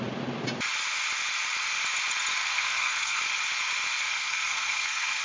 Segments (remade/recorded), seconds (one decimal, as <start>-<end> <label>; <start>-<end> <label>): 0.0-2.4 recorded; 2.4-3.2 remade; 3.2-4.0 recorded; 4.0-5.2 remade